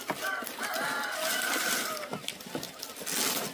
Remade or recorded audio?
recorded